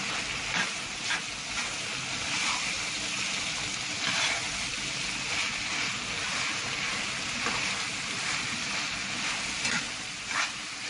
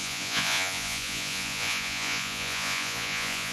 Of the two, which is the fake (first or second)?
second